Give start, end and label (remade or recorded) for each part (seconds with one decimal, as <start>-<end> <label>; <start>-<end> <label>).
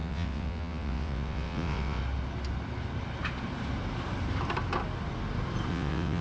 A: 0.0-2.0 remade; 2.0-5.7 recorded; 5.7-6.2 remade